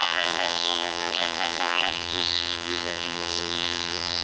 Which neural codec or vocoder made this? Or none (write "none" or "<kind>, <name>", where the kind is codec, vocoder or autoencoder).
vocoder, BigVGAN v2